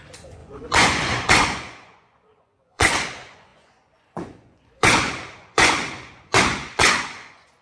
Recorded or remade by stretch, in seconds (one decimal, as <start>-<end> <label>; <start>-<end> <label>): 0.0-7.6 remade